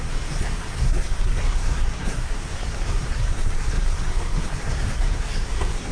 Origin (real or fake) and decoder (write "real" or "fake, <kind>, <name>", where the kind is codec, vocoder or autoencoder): fake, codec, SNAC